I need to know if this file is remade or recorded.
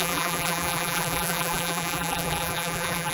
remade